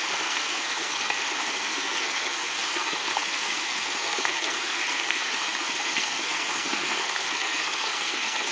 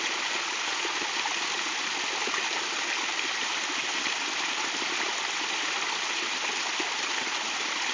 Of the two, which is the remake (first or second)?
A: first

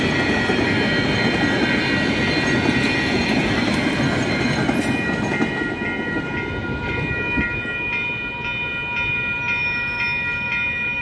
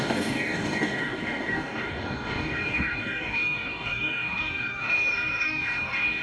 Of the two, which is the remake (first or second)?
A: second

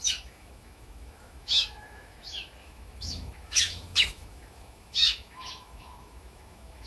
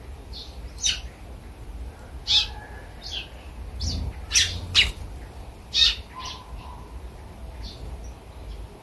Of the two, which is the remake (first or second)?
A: first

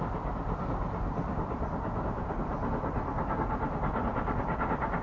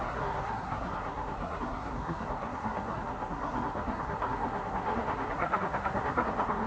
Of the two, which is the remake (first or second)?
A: second